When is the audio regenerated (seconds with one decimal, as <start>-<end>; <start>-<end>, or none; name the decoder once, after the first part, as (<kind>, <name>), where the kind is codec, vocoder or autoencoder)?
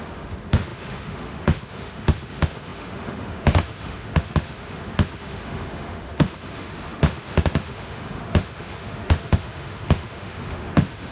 0.0-11.1 (autoencoder, DAC-VAE)